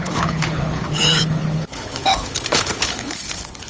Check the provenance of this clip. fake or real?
fake